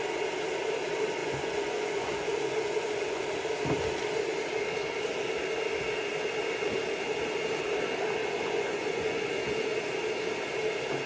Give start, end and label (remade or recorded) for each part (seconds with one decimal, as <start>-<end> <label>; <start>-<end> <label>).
0.0-1.2 recorded; 1.2-3.2 remade; 3.2-8.2 recorded; 8.2-9.2 remade; 9.2-11.1 recorded